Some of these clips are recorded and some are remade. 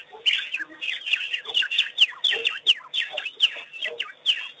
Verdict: recorded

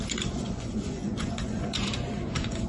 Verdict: remade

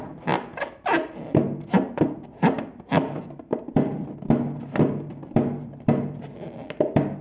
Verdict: recorded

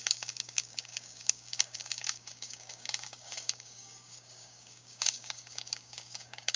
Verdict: remade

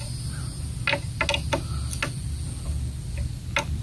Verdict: recorded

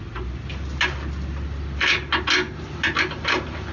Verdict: recorded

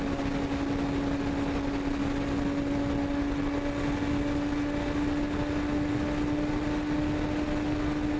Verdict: recorded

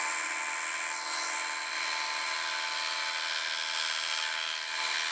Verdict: recorded